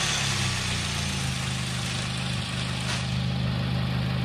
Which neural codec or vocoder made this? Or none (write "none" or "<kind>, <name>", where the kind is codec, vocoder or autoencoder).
none